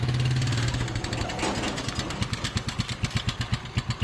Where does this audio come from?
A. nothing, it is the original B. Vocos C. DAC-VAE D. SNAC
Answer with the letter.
A